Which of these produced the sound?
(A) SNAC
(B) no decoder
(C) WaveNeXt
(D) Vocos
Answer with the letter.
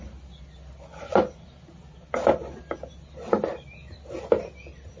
B